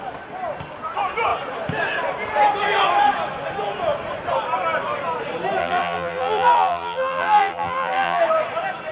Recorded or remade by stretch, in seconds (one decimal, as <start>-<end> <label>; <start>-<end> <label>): 0.0-5.6 recorded; 5.6-8.2 remade; 8.2-8.9 recorded